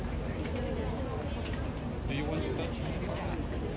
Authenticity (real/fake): real